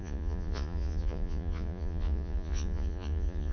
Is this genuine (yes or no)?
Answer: no